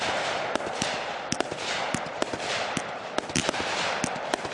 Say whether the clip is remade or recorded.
recorded